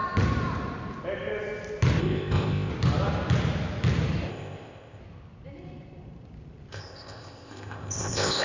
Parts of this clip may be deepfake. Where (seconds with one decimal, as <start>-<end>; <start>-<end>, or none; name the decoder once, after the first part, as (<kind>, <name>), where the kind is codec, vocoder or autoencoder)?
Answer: 2.0-2.7 (codec, ZipCodec); 4.3-5.0; 6.7-8.4